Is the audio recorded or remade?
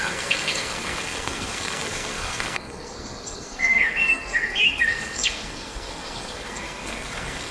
remade